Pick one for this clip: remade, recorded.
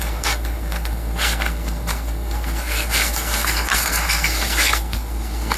remade